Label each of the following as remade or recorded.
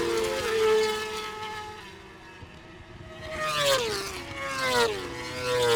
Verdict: recorded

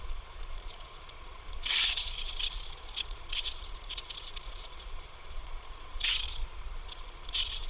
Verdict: remade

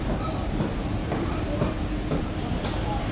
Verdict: recorded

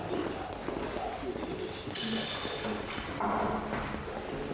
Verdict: recorded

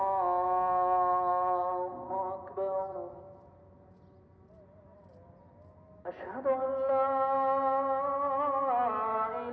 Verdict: recorded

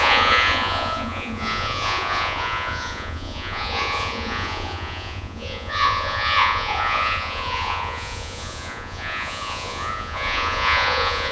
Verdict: remade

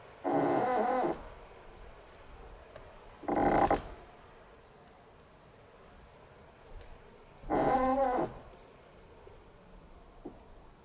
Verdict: recorded